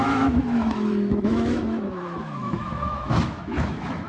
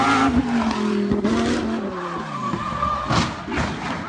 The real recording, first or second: second